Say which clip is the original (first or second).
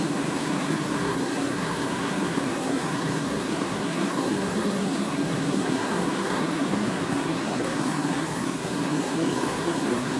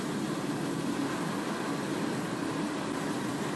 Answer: second